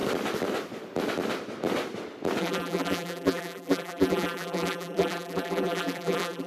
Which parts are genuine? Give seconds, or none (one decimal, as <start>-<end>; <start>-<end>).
0.0-2.4